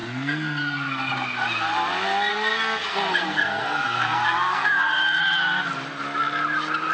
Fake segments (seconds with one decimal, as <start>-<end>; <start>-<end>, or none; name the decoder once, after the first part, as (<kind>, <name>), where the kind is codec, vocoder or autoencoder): 0.0-1.1 (codec, SNAC); 2.3-5.2